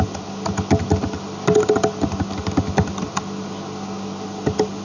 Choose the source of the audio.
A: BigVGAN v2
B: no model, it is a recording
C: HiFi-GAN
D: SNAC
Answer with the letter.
B